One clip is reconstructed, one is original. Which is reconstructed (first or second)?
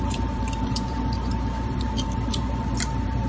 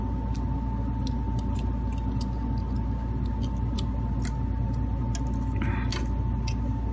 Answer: first